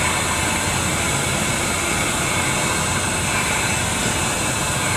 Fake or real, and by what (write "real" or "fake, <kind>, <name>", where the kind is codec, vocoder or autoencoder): real